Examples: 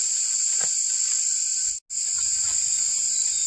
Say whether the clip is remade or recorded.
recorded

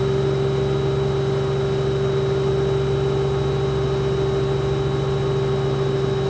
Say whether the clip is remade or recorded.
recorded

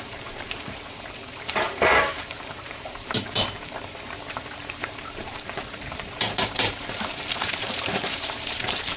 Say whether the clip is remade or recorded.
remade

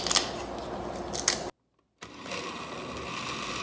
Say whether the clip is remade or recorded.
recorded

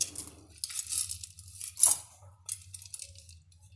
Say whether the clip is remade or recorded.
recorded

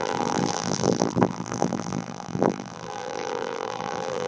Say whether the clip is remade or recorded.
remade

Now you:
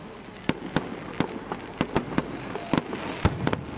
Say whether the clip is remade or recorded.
recorded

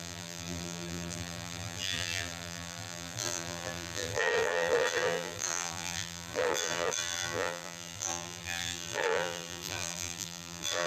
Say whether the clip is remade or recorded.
remade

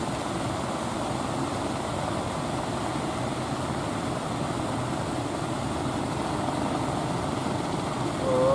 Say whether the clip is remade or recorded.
recorded